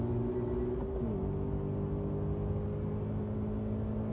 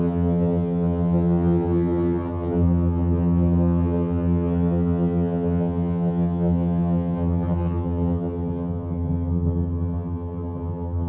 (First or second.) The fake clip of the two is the second